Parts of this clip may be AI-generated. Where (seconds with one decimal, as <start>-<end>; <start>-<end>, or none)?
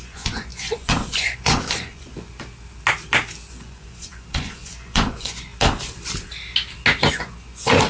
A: 0.0-2.3; 3.5-5.5; 7.1-7.9